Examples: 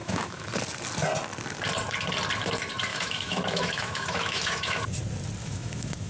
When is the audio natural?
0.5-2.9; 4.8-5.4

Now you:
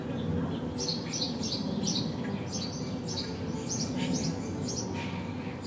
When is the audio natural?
0.0-5.7

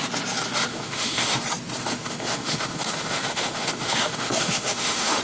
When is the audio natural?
0.0-0.7; 1.4-1.8

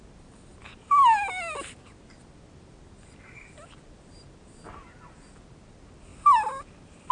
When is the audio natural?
0.0-7.1

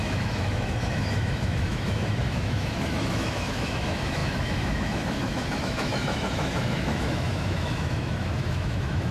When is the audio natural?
none

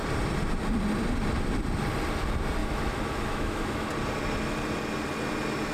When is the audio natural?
0.0-2.6; 3.9-5.7